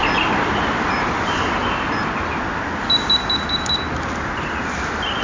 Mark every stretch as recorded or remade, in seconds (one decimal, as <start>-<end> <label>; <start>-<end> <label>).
0.0-1.1 remade; 1.1-1.6 recorded; 1.6-2.3 remade; 2.3-5.2 recorded